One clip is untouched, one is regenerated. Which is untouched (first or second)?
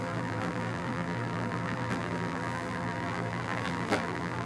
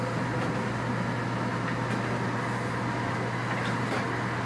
second